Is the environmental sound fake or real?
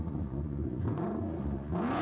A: fake